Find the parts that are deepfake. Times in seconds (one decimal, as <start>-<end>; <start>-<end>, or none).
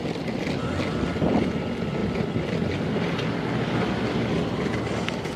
none